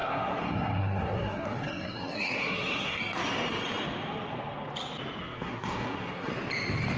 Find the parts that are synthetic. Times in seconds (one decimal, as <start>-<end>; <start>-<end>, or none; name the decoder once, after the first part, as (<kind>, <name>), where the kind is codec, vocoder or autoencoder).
0.0-3.0 (codec, SNAC); 5.2-6.3